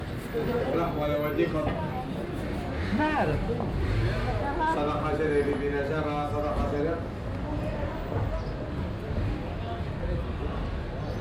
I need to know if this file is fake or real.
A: real